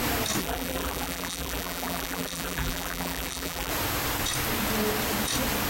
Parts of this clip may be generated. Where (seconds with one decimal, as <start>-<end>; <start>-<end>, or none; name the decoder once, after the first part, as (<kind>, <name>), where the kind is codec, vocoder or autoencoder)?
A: 0.4-3.7 (vocoder, BigVGAN v2)